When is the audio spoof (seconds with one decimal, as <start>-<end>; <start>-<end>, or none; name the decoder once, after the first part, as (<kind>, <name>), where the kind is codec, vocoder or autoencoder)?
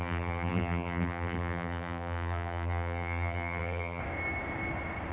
0.0-4.0 (vocoder, BigVGAN v2)